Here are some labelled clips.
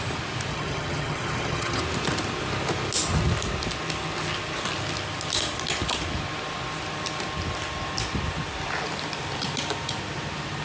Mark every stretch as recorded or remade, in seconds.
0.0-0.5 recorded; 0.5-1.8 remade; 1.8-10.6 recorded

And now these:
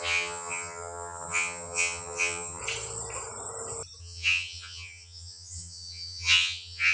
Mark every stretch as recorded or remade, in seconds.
0.0-2.6 remade; 2.6-4.0 recorded; 4.0-6.9 remade

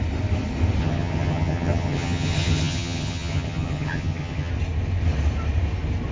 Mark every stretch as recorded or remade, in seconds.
0.0-0.8 recorded; 0.8-4.5 remade; 4.5-6.1 recorded

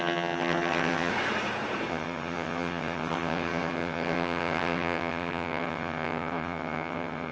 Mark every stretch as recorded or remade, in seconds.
0.0-1.1 remade; 1.1-1.9 recorded; 1.9-7.3 remade

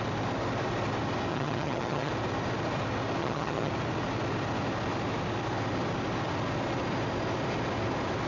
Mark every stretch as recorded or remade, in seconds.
0.0-1.3 recorded; 1.3-2.1 remade; 2.1-3.2 recorded; 3.2-3.7 remade; 3.7-8.3 recorded

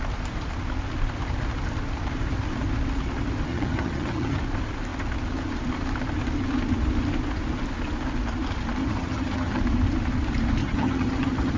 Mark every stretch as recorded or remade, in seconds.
0.0-3.5 recorded; 3.5-4.4 remade; 4.4-8.8 recorded; 8.8-9.6 remade; 9.6-10.6 recorded; 10.6-11.6 remade

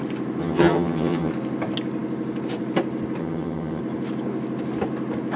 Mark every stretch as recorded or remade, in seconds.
0.0-0.4 recorded; 0.4-1.3 remade; 1.3-3.2 recorded; 3.2-3.8 remade; 3.8-5.4 recorded